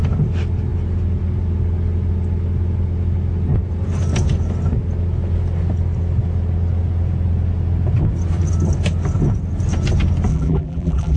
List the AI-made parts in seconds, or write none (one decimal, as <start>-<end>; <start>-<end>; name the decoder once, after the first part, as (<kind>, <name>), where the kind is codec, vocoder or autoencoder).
10.3-11.2 (vocoder, BigVGAN v2)